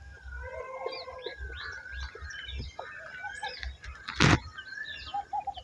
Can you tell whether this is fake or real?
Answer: real